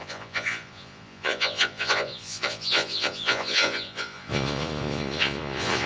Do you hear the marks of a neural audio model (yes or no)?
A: yes